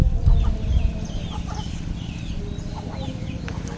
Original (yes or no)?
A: yes